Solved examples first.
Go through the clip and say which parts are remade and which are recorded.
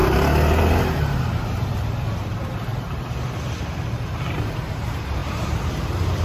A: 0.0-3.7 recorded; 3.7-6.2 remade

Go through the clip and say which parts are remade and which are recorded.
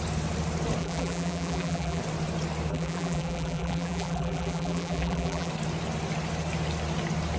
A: 0.0-0.8 recorded; 0.8-2.0 remade; 2.0-2.7 recorded; 2.7-5.5 remade; 5.5-7.4 recorded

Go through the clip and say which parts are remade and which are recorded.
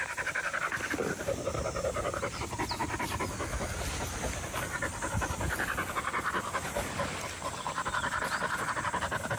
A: 0.0-2.8 recorded; 2.8-3.7 remade; 3.7-9.4 recorded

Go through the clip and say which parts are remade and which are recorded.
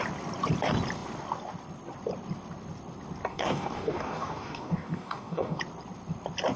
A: 0.0-3.3 recorded; 3.3-5.6 remade; 5.6-6.6 recorded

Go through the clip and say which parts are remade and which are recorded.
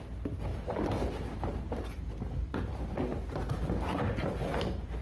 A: 0.0-5.0 recorded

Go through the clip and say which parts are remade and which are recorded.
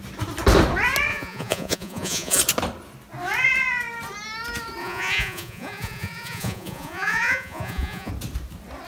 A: 0.0-1.1 recorded; 1.1-2.4 remade; 2.4-4.8 recorded; 4.8-8.1 remade; 8.1-8.9 recorded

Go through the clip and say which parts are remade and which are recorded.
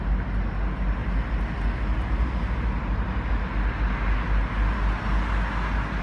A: 0.0-6.0 recorded